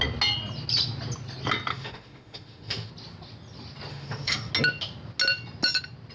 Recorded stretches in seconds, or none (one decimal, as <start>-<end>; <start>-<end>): 0.0-1.7; 2.9-3.9; 4.5-6.1